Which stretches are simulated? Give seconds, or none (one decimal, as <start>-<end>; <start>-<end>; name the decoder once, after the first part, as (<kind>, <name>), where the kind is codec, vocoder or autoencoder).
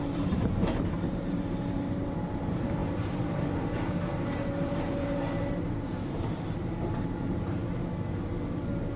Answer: 0.0-7.6 (vocoder, BigVGAN v2)